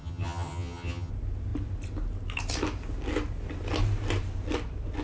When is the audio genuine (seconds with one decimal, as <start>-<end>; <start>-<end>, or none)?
1.1-5.0